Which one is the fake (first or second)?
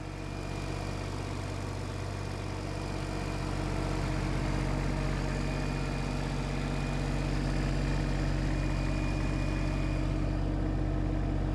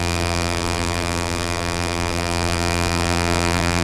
second